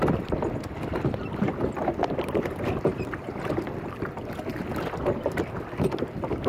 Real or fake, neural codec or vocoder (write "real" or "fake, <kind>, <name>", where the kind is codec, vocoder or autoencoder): real